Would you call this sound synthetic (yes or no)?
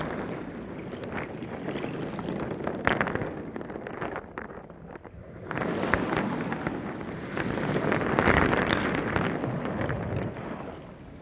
no